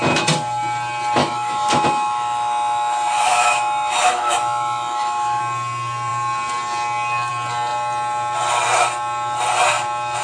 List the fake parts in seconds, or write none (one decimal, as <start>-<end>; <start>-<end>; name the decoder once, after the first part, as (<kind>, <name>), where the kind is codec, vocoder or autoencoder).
1.2-5.4 (autoencoder, DAC-VAE)